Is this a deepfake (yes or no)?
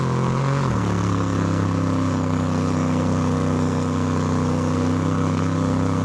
yes